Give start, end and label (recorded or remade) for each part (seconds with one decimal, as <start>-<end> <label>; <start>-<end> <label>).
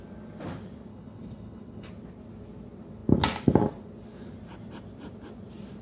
0.0-0.9 recorded; 0.9-1.9 remade; 1.9-5.8 recorded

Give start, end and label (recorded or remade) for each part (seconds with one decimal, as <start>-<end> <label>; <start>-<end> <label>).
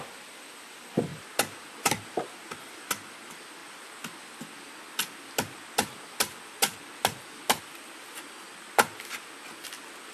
0.0-10.1 recorded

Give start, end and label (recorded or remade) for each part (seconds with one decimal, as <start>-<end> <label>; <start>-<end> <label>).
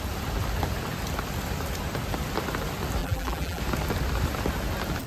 0.0-3.0 recorded; 3.0-3.6 remade; 3.6-5.1 recorded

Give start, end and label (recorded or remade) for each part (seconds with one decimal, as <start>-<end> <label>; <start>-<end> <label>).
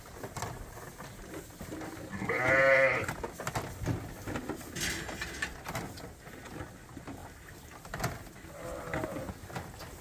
0.0-10.0 recorded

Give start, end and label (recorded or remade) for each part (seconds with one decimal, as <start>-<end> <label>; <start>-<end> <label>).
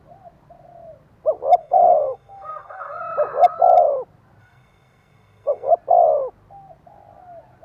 0.0-1.6 recorded; 1.6-3.0 remade; 3.0-4.4 recorded; 4.4-5.7 remade; 5.7-7.6 recorded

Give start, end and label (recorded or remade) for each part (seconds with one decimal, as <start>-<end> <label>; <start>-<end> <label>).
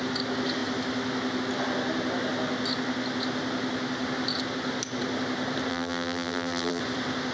0.0-5.7 recorded; 5.7-6.8 remade; 6.8-7.3 recorded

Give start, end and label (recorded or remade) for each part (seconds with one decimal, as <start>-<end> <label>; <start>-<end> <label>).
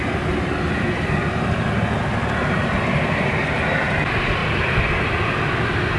0.0-6.0 recorded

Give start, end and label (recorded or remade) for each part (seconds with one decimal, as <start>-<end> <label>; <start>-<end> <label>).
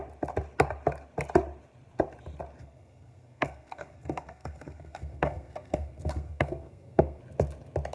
0.0-2.6 recorded; 2.6-7.2 remade; 7.2-7.9 recorded